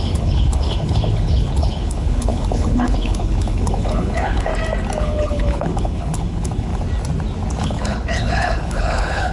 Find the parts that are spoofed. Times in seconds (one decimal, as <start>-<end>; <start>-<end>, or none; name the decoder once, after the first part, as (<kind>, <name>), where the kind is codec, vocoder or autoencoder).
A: 0.0-4.5 (codec, HILCodec); 5.0-6.7; 7.6-9.3

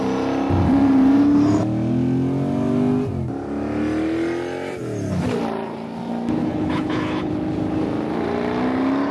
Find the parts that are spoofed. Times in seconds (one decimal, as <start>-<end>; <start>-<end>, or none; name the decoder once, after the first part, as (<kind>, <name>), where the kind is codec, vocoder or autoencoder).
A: 6.4-7.3 (codec, HILCodec)

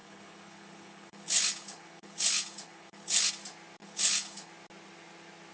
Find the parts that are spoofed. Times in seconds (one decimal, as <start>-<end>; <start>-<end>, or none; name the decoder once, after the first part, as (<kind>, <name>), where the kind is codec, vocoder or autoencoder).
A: 0.0-3.3 (codec, HILCodec); 3.8-4.5

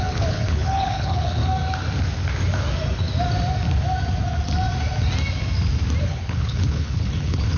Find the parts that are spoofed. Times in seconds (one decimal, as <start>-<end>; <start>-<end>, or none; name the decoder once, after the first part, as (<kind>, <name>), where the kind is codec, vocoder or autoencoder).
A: 0.0-1.4 (codec, HILCodec); 6.0-7.6